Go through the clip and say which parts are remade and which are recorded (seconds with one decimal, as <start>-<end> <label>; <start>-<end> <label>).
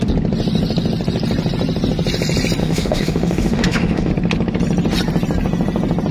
0.0-2.6 recorded; 2.6-4.1 remade; 4.1-6.1 recorded